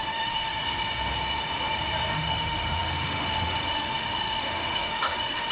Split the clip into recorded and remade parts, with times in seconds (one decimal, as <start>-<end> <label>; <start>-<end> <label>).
0.0-0.5 remade; 0.5-2.1 recorded; 2.1-5.5 remade